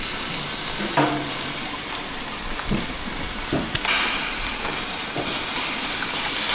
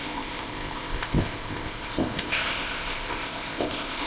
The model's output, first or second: second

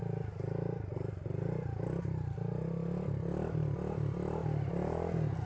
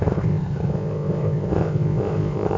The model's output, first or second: second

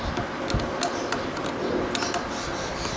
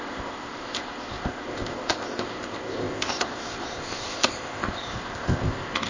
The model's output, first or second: second